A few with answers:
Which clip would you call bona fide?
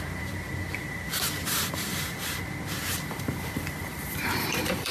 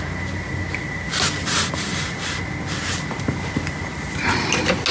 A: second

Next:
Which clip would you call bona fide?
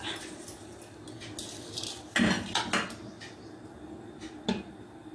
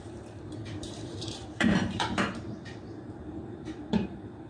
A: first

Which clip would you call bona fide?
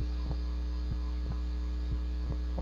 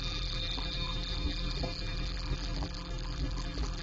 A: first